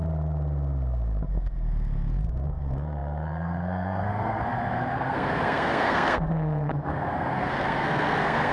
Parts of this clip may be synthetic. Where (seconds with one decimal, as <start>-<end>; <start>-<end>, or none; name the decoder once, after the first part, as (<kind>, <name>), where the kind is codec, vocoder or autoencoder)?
1.3-8.5 (codec, SNAC)